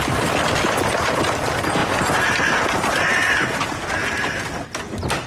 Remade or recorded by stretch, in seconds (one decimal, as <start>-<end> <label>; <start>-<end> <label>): 0.0-5.3 recorded